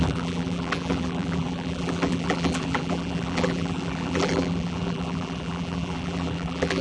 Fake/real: fake